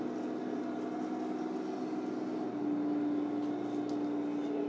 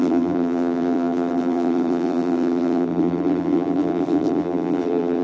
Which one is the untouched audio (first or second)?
first